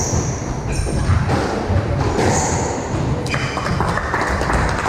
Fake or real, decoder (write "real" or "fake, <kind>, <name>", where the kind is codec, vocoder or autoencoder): real